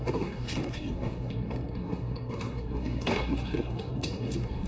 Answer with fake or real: fake